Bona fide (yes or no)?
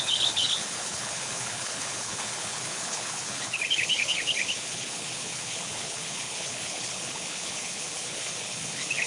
no